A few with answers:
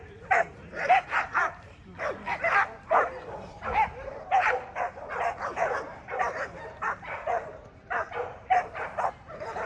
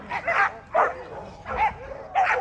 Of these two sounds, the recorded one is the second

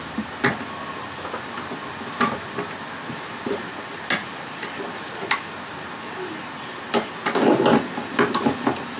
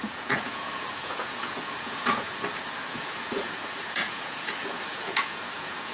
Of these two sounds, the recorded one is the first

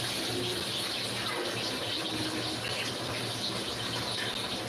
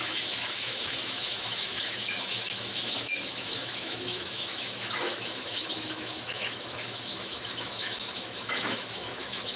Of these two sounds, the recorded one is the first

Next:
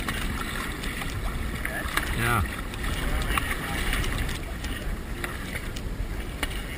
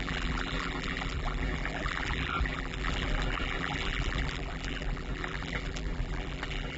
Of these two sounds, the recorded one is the first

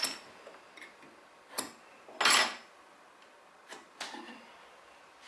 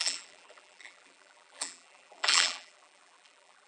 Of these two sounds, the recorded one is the first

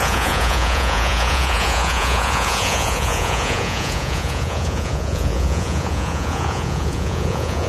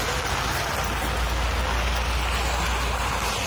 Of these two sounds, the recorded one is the second